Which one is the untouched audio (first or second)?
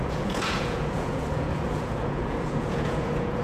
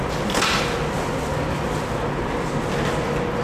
second